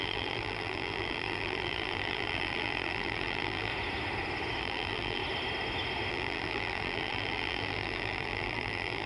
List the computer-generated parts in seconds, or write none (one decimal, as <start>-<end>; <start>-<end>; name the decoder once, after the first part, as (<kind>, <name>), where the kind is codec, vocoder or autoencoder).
0.0-3.7 (vocoder, BigVGAN v2); 4.6-5.2; 6.1-9.1